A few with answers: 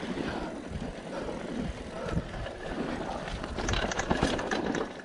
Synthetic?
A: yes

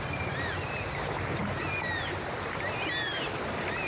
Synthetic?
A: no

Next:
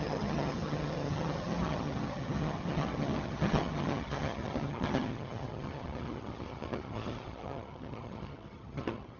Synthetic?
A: yes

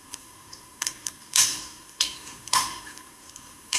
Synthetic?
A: yes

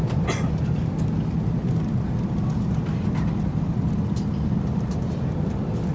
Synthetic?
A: no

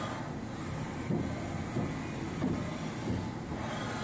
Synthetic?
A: no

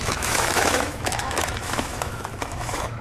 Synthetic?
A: yes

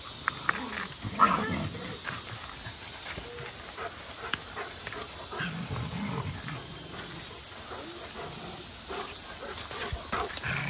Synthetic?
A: no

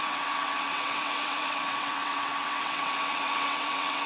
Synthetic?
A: yes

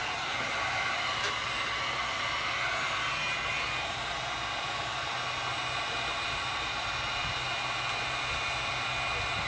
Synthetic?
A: no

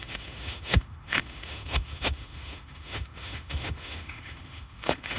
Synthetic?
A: yes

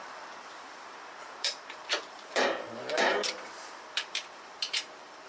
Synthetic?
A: yes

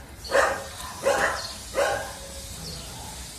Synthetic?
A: no